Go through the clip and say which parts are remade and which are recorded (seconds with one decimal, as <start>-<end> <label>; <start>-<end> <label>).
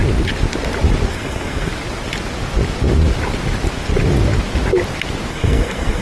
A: 0.0-1.1 recorded; 1.1-1.7 remade; 1.7-5.3 recorded; 5.3-6.0 remade